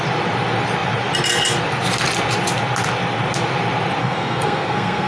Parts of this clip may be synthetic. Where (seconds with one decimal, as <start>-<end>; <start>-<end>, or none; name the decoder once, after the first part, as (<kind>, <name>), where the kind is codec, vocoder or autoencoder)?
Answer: 4.0-5.1 (codec, SNAC)